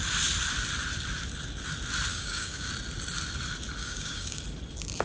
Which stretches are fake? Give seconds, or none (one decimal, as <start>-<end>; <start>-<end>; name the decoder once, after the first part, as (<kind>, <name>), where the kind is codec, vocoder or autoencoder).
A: 2.1-2.7 (codec, DAC); 3.8-4.4